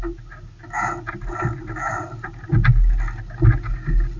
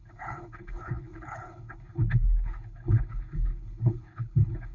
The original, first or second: first